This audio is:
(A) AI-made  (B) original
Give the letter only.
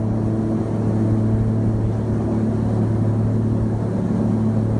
B